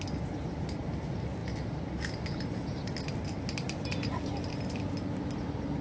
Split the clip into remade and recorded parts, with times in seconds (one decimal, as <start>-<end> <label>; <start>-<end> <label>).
0.0-5.8 recorded